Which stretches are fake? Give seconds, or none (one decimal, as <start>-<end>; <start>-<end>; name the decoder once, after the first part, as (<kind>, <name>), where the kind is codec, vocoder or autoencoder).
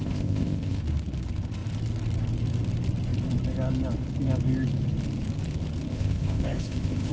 0.0-0.8 (codec, ZipCodec); 5.9-7.1